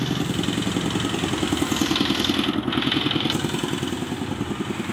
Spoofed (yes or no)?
no